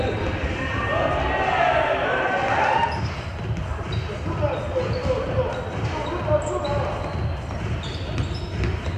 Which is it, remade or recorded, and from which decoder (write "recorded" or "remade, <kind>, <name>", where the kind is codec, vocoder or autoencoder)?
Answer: recorded